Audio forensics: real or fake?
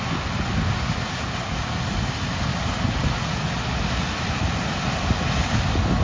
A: real